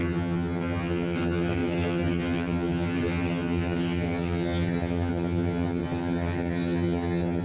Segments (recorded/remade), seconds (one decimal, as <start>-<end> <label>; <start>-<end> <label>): 0.0-7.4 remade